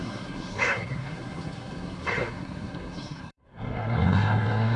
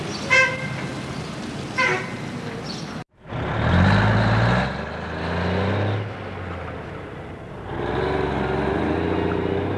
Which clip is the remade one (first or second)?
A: first